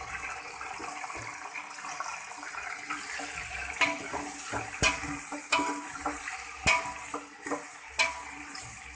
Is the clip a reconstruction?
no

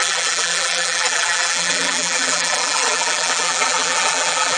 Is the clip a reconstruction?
yes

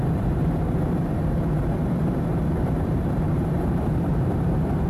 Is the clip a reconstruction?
yes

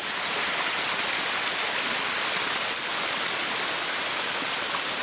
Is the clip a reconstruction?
no